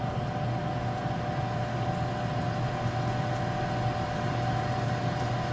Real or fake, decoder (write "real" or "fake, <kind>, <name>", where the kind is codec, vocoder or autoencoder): real